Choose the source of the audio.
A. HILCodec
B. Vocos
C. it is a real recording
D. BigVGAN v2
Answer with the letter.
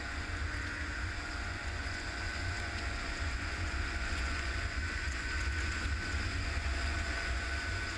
B